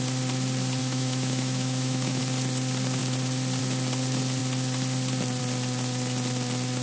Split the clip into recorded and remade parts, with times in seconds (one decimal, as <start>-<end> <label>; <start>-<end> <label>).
0.0-0.8 recorded; 0.8-2.2 remade; 2.2-6.8 recorded